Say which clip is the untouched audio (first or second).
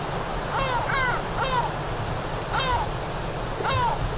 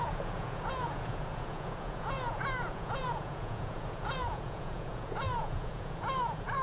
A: first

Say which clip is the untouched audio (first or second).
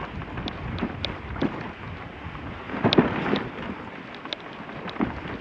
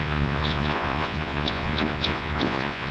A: first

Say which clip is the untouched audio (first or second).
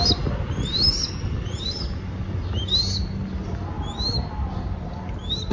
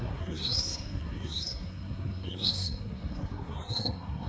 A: first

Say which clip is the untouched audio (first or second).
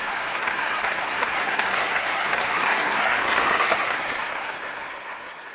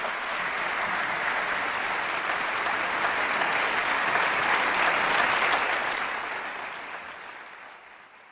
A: second